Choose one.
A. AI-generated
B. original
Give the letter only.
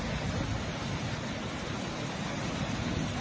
B